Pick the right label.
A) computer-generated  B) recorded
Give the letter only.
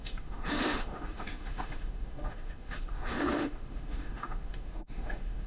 A